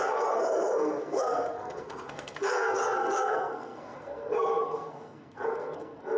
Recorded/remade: remade